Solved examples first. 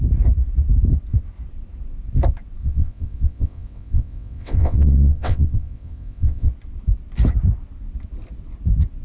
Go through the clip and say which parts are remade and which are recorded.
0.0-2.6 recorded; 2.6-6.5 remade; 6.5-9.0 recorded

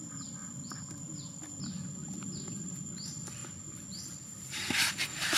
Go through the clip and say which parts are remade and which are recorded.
0.0-5.4 recorded

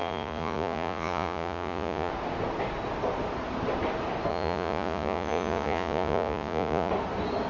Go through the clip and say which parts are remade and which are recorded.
0.0-2.1 remade; 2.1-4.3 recorded; 4.3-6.9 remade; 6.9-7.5 recorded

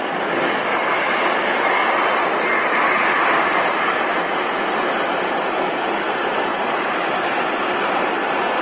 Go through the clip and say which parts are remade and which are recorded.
0.0-6.5 recorded; 6.5-7.2 remade; 7.2-8.6 recorded

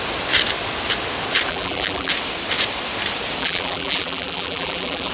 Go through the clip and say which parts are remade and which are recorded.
0.0-1.5 recorded; 1.5-2.1 remade; 2.1-3.4 recorded; 3.4-5.1 remade

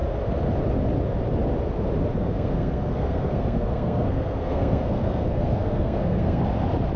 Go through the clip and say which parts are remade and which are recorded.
0.0-2.2 recorded; 2.2-6.4 remade; 6.4-7.0 recorded